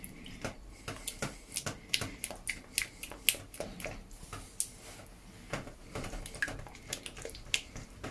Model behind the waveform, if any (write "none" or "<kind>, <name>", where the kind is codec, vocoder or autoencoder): none